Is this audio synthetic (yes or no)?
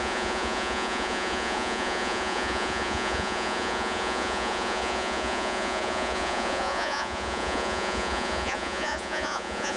yes